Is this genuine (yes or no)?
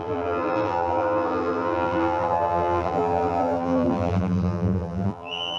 no